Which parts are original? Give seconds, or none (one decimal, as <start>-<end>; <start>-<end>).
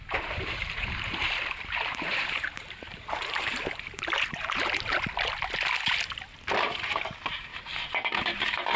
4.7-7.5